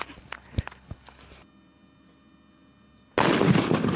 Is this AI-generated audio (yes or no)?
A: no